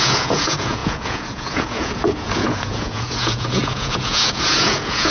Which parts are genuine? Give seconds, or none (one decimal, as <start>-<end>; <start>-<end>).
none